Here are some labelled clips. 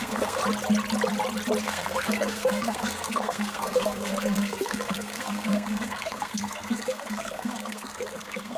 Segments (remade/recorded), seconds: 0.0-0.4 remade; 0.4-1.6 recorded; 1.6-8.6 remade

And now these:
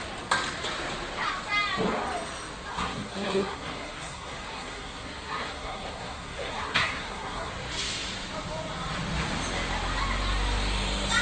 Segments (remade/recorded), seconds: 0.0-2.7 recorded; 2.7-7.5 remade; 7.5-11.2 recorded

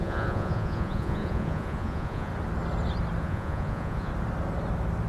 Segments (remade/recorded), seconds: 0.0-2.3 remade; 2.3-3.2 recorded; 3.2-4.1 remade; 4.1-5.1 recorded

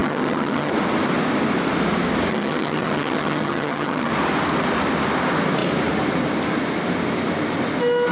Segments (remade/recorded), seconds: 0.0-0.7 remade; 0.7-2.3 recorded; 2.3-4.1 remade; 4.1-8.1 recorded

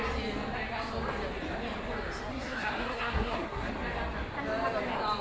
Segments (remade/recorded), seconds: 0.0-2.3 recorded; 2.3-3.7 remade; 3.7-5.2 recorded